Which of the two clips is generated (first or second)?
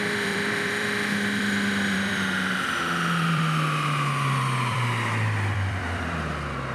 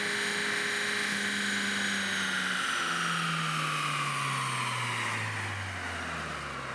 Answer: first